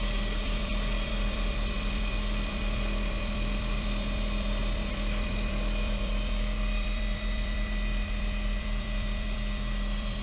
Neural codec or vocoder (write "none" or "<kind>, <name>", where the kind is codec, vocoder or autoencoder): vocoder, BigVGAN v2